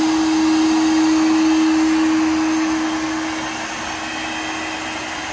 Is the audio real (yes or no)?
yes